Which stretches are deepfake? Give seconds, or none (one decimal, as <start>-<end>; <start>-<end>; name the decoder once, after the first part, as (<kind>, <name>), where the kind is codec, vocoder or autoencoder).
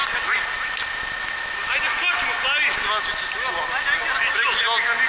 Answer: none